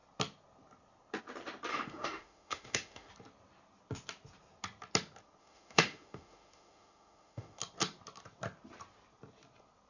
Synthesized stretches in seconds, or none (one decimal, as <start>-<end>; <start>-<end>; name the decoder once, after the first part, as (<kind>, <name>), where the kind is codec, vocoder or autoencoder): 1.7-3.1 (autoencoder, DAC-VAE); 5.4-7.6